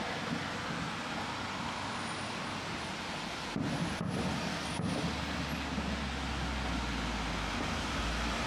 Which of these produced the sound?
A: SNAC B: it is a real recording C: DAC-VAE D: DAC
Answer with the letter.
B